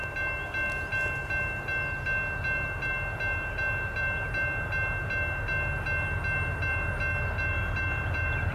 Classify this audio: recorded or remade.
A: recorded